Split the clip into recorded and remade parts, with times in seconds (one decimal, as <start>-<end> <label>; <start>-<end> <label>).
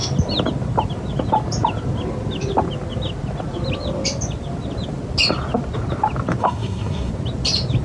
0.0-6.4 recorded; 6.4-7.1 remade; 7.1-7.8 recorded